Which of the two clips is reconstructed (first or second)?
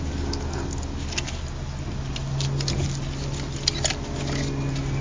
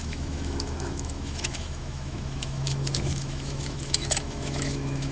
second